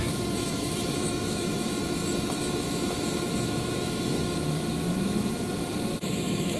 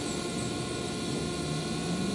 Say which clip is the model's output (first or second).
first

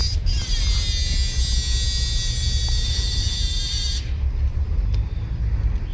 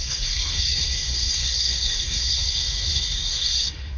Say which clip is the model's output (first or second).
second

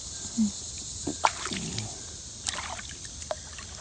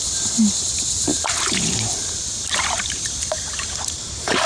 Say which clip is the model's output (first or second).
second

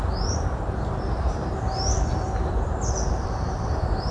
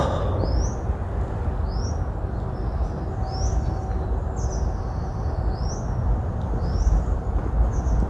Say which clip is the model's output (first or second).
first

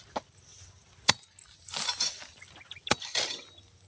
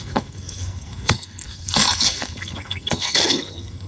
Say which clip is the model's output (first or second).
second